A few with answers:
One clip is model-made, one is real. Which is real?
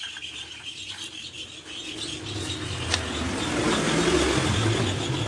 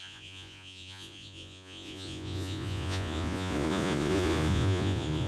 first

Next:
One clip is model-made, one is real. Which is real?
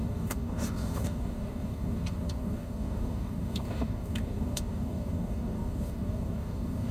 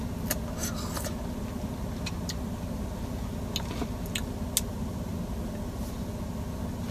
second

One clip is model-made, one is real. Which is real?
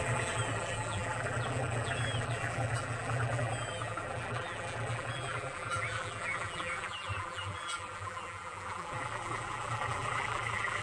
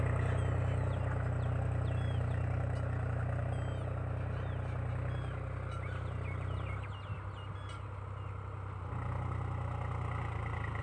second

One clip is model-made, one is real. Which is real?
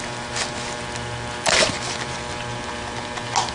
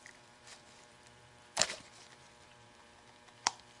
first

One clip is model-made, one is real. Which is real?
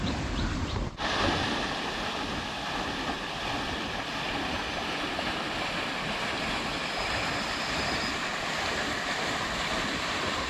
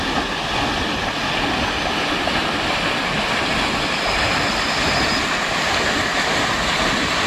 second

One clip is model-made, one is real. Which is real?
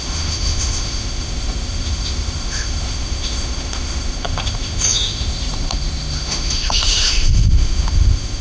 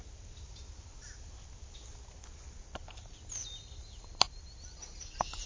second